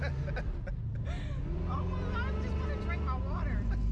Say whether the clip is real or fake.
real